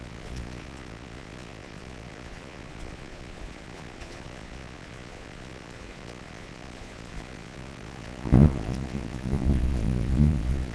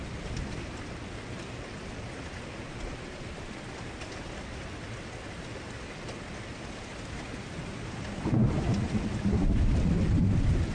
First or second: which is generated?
first